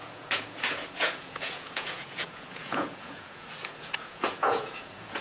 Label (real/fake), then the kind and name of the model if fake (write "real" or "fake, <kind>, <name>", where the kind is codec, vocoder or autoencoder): fake, vocoder, Vocos